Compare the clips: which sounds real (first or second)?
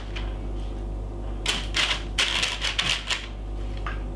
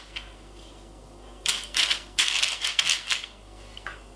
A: first